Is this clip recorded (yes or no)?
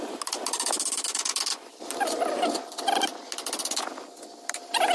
yes